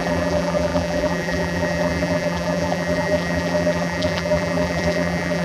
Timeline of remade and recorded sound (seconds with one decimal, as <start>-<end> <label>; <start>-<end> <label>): 0.0-5.4 remade